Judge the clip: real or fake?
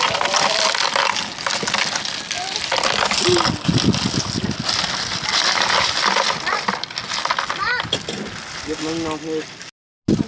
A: real